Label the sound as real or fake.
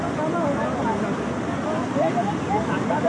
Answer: real